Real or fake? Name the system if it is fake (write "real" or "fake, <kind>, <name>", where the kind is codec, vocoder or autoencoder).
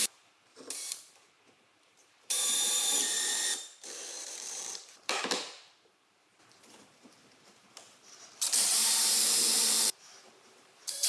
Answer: fake, vocoder, BigVGAN v2